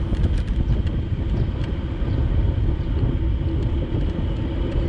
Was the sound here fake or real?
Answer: real